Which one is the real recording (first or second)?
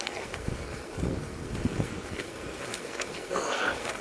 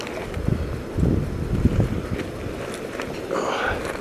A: second